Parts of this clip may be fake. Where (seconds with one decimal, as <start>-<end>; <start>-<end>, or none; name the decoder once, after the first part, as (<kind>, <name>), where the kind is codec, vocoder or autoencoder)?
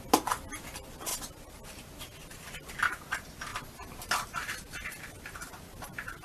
none